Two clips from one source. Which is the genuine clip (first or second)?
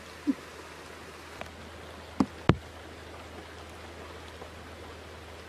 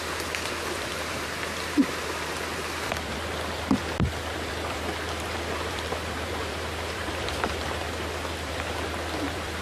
first